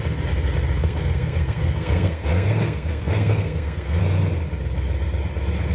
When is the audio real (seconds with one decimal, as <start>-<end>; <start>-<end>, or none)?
0.0-0.8; 4.0-5.7